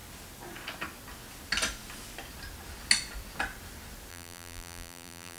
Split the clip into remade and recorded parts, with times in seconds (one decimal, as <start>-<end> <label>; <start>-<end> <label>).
0.0-4.1 recorded; 4.1-5.4 remade

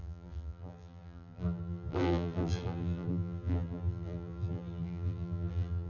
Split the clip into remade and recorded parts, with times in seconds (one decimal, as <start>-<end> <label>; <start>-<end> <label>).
0.0-5.9 remade